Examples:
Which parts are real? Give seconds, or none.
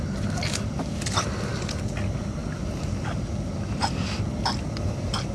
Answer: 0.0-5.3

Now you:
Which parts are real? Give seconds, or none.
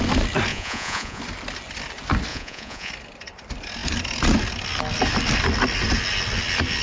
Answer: 0.0-0.5; 1.2-2.3; 2.9-6.8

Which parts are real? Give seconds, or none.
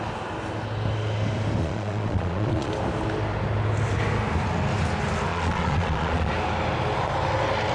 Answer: 0.0-1.6; 2.7-5.3; 6.3-7.7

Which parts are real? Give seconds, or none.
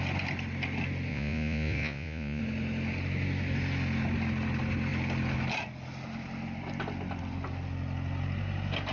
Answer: 0.0-1.1; 2.4-8.9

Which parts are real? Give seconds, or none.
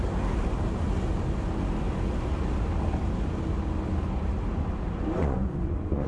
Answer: 0.0-5.2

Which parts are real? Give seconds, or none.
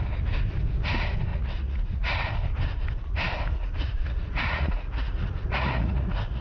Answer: 0.0-1.3; 2.3-3.6